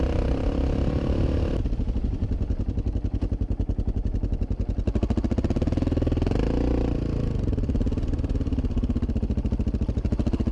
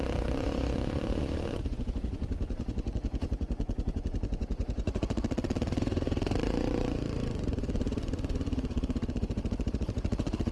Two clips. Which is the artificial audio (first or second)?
second